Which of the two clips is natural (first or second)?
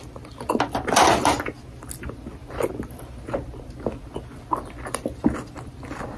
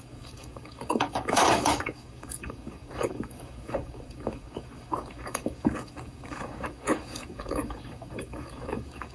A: first